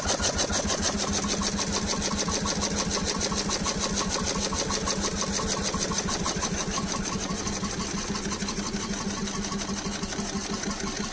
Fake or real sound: real